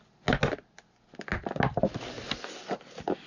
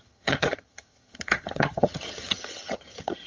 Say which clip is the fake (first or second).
second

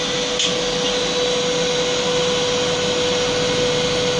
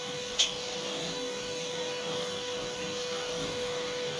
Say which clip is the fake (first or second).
second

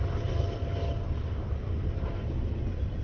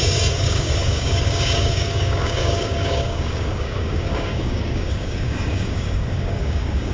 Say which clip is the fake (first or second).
second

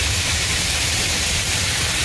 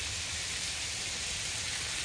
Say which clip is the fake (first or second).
first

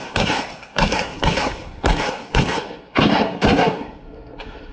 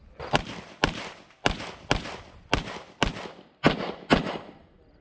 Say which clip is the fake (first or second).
first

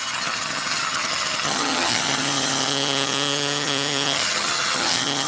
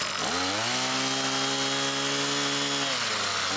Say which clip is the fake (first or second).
first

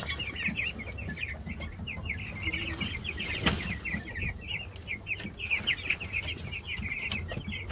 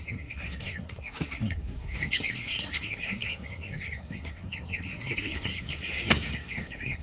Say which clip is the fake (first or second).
second